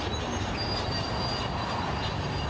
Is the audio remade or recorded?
recorded